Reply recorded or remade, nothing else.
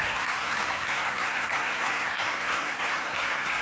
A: remade